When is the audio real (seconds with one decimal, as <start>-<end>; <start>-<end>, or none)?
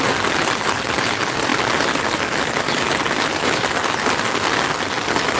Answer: 0.0-5.4